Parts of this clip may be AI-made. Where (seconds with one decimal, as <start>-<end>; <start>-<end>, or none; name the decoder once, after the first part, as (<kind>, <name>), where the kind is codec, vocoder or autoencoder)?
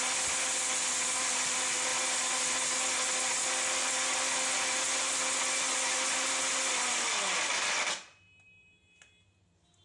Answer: none